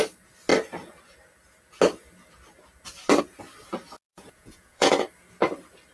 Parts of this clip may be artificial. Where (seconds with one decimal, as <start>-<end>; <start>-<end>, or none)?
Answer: 4.1-4.9